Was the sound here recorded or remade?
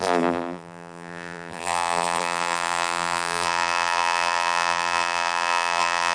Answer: remade